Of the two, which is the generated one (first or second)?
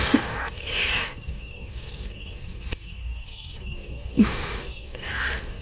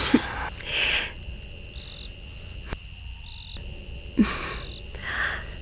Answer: first